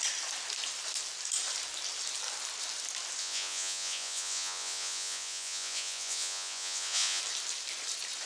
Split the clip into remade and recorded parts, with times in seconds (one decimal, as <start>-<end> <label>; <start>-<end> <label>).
0.0-3.2 recorded; 3.2-7.2 remade; 7.2-8.3 recorded